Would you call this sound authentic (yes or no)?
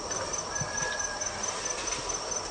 yes